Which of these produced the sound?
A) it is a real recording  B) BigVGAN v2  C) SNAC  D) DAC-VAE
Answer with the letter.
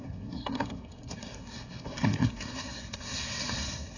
C